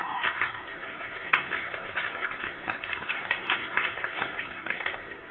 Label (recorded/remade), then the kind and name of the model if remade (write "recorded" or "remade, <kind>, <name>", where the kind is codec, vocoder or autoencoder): remade, codec, SNAC